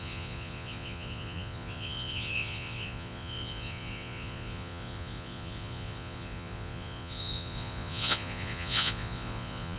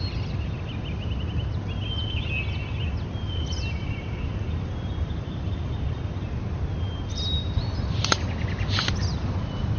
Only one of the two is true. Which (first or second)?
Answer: second